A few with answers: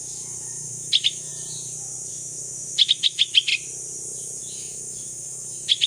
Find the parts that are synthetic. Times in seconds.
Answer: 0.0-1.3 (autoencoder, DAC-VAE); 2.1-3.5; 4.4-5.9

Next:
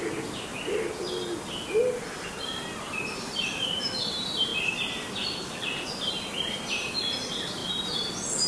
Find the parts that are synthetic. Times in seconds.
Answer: 0.0-0.5 (vocoder, BigVGAN v2); 2.8-4.5; 6.1-7.6

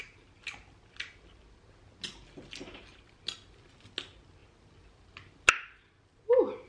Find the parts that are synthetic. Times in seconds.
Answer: none

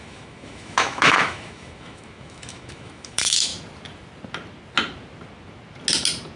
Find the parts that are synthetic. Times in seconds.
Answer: 0.0-3.5 (autoencoder, DAC-VAE)

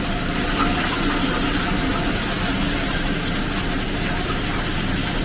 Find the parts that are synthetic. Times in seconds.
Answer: none

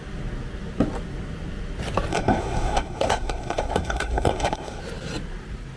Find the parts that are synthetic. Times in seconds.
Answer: 2.1-4.8 (codec, SNAC)

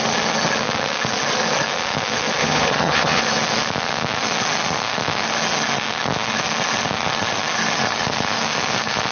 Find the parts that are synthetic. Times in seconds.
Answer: 2.4-3.2 (vocoder, HiFi-GAN)

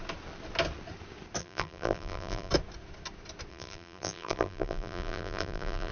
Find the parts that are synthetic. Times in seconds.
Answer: 1.4-2.5 (vocoder, BigVGAN v2); 3.5-5.9